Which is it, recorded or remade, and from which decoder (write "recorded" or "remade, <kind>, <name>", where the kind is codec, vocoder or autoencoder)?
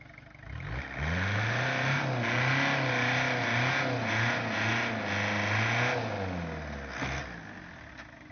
recorded